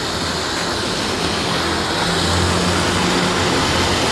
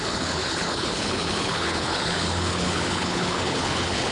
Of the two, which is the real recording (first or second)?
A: first